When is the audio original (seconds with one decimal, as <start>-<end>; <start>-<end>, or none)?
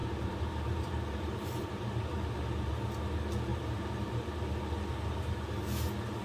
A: 2.7-3.5; 4.1-6.2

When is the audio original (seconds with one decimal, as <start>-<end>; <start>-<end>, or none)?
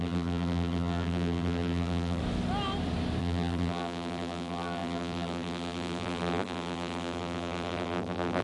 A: 2.2-3.2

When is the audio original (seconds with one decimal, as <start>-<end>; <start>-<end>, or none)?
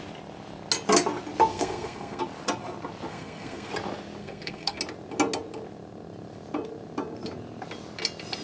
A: 0.0-1.5; 2.2-3.1; 3.7-4.2; 4.8-8.4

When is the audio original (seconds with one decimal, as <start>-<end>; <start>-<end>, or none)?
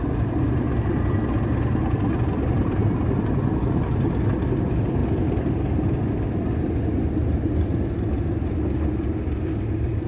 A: 0.0-5.0; 6.7-10.1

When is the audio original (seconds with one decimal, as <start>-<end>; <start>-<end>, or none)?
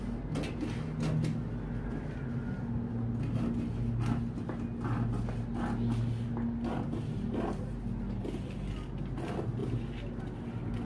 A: 0.0-10.8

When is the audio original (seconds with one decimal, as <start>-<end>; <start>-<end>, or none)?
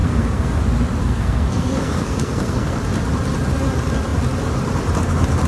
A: 0.6-1.0; 2.8-5.5